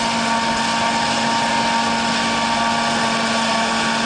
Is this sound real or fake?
real